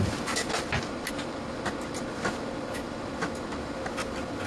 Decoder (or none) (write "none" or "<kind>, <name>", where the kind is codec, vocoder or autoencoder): none